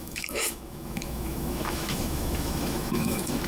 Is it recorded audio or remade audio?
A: remade